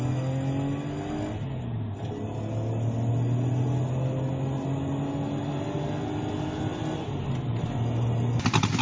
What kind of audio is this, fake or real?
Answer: real